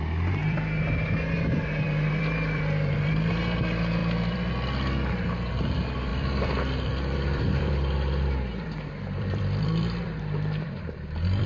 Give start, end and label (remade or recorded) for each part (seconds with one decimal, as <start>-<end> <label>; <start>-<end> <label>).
0.0-0.4 recorded; 0.4-3.3 remade; 3.3-4.0 recorded; 4.0-4.5 remade; 4.5-6.1 recorded; 6.1-11.5 remade